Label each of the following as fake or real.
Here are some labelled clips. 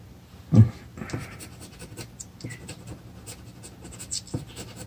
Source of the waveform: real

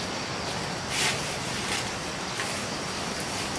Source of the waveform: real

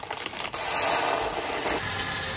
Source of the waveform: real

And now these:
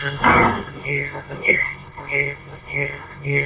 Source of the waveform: fake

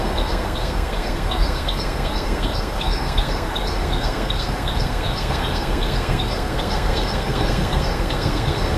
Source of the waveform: fake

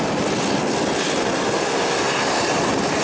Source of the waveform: real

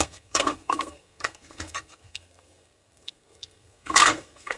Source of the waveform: fake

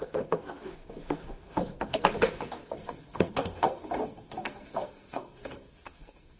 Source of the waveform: fake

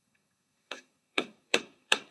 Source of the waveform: fake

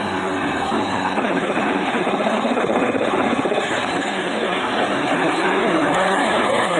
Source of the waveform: fake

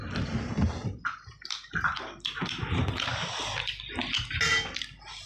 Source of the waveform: real